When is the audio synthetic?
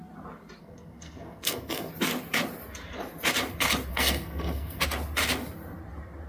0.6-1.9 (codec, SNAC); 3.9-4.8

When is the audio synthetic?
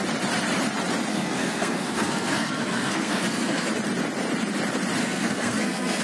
1.1-3.7 (codec, SNAC); 5.0-6.0